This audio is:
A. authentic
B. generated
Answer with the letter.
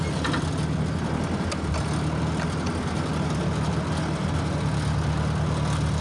A